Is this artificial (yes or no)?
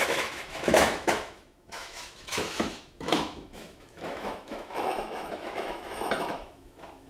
yes